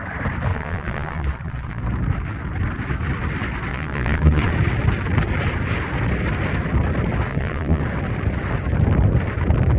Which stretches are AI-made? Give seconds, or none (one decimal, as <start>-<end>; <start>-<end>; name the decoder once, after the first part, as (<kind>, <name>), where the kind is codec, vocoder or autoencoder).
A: 0.5-1.8 (vocoder, Vocos); 3.7-4.5; 7.3-7.8